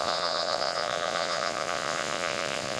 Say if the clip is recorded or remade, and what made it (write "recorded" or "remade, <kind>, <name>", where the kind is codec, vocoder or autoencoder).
remade, vocoder, Vocos